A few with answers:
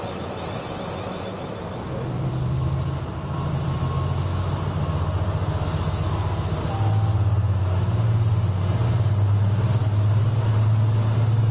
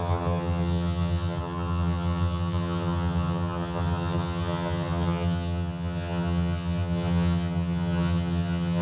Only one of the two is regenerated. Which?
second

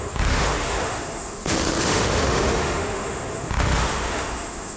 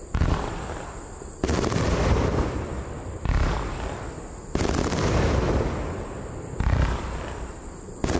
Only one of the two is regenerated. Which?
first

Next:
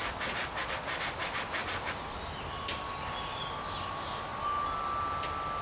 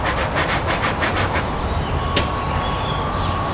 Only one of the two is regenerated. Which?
second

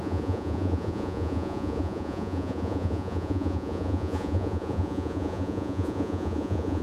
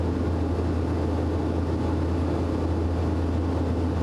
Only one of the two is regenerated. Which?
first